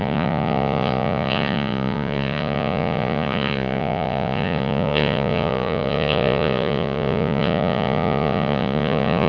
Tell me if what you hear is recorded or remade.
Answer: remade